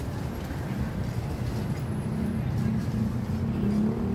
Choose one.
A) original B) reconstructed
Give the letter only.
A